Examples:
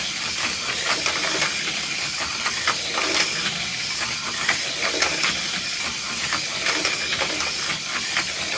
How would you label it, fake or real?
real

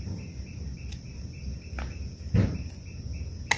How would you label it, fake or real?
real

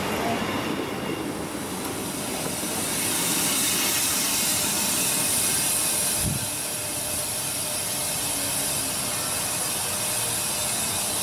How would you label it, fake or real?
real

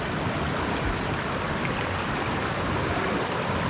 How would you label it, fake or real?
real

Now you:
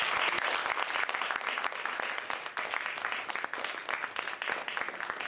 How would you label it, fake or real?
real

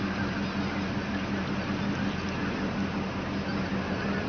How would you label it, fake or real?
real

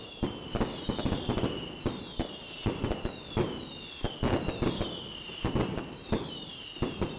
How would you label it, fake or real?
real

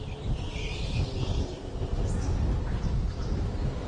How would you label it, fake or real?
real